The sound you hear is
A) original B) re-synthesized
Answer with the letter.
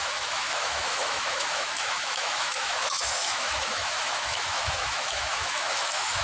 B